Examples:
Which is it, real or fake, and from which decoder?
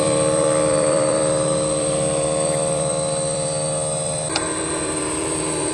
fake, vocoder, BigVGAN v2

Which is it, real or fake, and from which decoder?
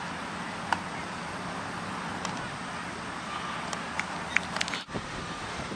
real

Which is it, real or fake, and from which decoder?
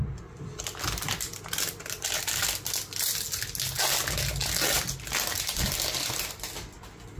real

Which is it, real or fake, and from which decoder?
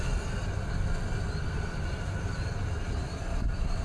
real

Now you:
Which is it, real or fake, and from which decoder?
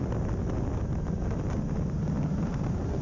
real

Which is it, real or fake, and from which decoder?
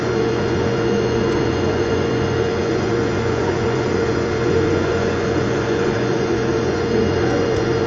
fake, vocoder, Vocos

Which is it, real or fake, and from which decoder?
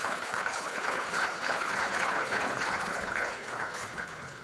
fake, codec, HILCodec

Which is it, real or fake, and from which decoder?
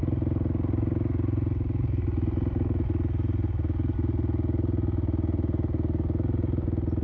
real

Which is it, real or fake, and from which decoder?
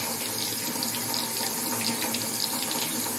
real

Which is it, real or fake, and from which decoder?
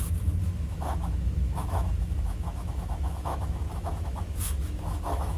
fake, autoencoder, DAC-VAE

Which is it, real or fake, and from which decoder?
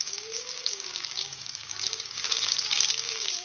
fake, codec, DAC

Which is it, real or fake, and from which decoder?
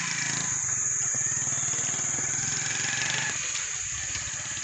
real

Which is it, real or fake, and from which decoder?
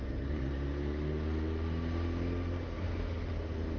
real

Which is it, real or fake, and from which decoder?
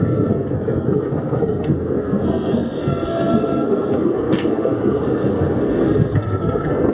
fake, codec, SNAC